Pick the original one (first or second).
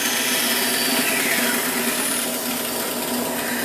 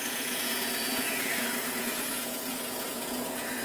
first